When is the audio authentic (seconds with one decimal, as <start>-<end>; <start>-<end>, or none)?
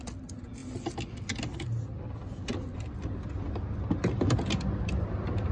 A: 0.0-5.5